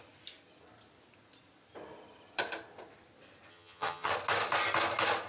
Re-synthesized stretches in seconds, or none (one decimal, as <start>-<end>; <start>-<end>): 3.5-4.1